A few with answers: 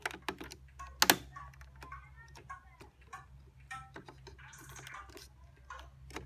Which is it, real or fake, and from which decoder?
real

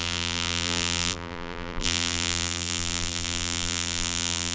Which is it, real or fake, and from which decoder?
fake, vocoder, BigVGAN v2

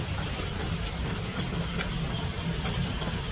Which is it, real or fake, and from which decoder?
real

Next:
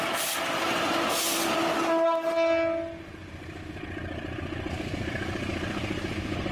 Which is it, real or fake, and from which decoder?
real